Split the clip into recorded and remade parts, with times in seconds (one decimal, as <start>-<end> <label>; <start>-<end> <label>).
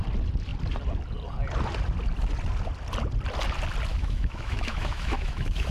0.0-3.9 recorded; 3.9-5.7 remade